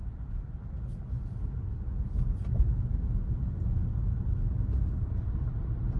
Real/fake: real